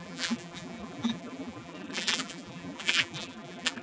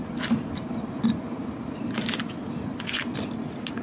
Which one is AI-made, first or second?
first